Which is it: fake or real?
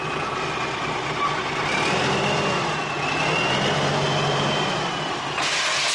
real